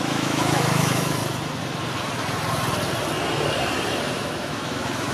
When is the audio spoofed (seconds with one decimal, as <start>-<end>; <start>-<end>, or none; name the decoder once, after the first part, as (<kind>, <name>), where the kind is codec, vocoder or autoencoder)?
0.0-1.2 (autoencoder, DAC-VAE); 4.1-5.1

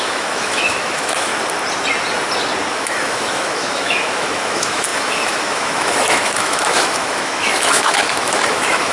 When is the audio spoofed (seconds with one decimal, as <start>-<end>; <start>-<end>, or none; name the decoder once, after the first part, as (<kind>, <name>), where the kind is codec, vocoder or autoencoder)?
0.0-1.3 (autoencoder, DAC-VAE); 2.7-8.9

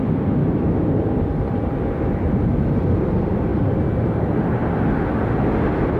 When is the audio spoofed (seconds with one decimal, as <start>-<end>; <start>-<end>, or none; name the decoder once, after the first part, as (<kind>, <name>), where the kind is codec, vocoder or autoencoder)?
0.4-0.9 (autoencoder, DAC-VAE)

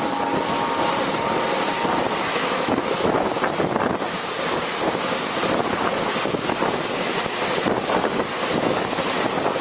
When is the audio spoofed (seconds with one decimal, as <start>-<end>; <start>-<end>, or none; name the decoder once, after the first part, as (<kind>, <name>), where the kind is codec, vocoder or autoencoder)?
2.3-3.4 (autoencoder, DAC-VAE)

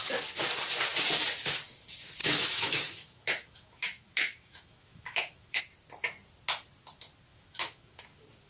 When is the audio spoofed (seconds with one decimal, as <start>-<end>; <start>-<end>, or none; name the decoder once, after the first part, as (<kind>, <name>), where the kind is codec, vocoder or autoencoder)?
2.2-5.6 (autoencoder, DAC-VAE); 7.3-8.0

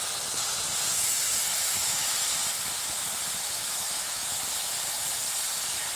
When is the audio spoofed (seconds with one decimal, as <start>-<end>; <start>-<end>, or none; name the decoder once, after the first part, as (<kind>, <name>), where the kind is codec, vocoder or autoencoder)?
0.9-2.3 (autoencoder, DAC-VAE); 3.4-4.4